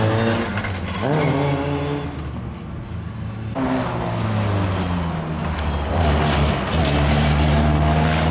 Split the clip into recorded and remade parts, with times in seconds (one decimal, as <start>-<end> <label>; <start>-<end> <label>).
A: 0.0-8.3 recorded